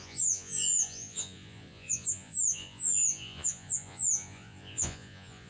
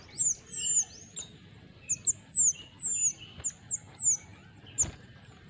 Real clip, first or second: second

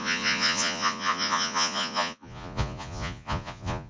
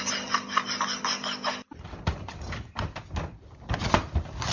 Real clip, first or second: second